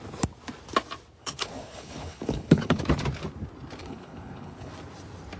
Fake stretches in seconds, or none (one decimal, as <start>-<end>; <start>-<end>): 1.2-2.8; 3.8-4.7